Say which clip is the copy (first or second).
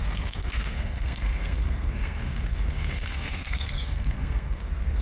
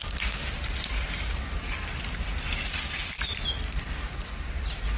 first